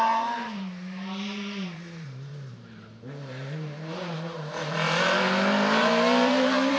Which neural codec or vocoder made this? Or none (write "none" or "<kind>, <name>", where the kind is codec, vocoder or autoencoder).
vocoder, BigVGAN v2